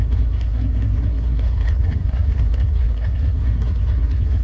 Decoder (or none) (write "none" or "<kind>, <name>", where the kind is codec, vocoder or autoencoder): codec, SNAC